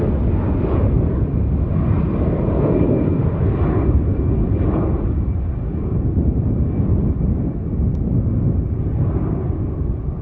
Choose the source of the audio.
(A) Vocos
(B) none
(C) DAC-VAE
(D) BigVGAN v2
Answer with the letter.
B